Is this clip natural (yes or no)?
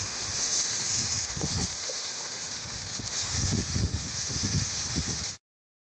no